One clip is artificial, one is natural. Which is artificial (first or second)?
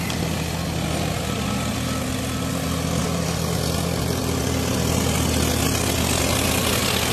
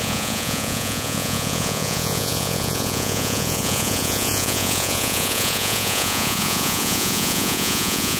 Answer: second